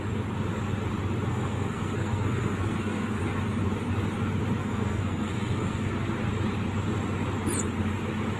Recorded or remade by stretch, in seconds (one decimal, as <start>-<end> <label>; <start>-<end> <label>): 0.0-1.3 recorded; 1.3-3.2 remade; 3.2-4.6 recorded; 4.6-5.9 remade; 5.9-8.4 recorded